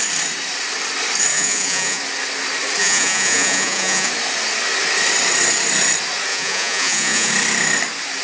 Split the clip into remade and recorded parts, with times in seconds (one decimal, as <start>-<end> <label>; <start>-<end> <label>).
0.0-1.3 recorded; 1.3-2.0 remade; 2.0-2.8 recorded; 2.8-4.1 remade; 4.1-6.3 recorded; 6.3-7.3 remade; 7.3-8.2 recorded